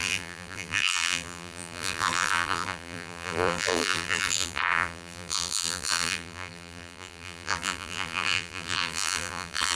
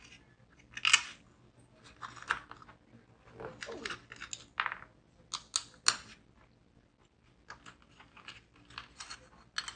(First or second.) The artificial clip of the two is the first